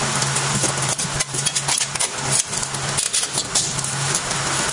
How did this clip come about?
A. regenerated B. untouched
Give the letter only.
B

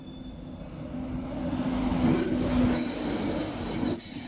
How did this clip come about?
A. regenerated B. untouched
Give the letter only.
B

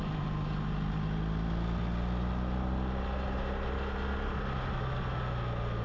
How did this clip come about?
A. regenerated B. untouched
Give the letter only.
B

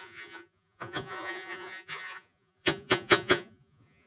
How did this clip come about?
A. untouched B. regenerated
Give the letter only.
B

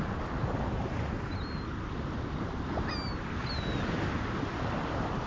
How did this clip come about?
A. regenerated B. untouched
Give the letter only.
B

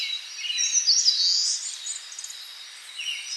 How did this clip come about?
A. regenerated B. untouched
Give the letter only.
B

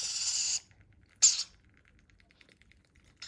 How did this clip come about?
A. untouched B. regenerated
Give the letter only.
A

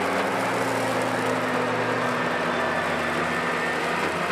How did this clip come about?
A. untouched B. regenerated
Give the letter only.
A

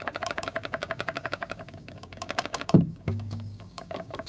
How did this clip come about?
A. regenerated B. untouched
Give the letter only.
A